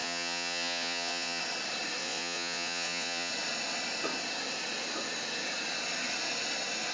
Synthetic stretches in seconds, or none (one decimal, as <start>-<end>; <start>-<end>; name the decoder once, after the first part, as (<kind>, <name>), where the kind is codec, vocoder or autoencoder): 0.0-1.4 (vocoder, Vocos); 2.0-3.3